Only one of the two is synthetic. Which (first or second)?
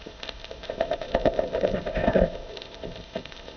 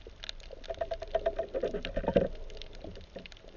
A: first